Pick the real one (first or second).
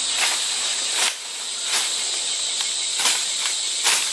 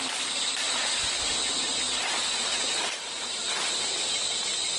first